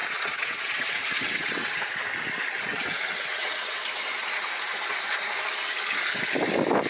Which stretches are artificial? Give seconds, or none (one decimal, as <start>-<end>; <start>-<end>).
0.0-1.8; 2.7-3.8

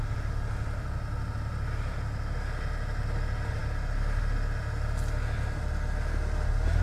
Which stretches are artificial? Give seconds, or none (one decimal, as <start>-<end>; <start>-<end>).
none